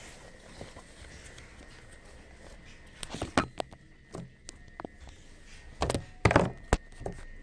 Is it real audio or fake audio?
real